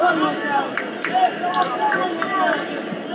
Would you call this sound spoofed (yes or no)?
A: no